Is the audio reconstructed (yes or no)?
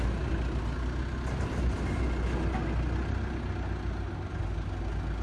no